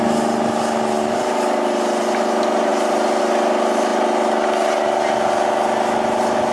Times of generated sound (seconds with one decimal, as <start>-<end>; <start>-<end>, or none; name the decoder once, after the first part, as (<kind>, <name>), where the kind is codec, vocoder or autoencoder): none